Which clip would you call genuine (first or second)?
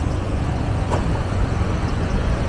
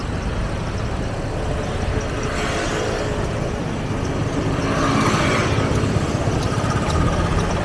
second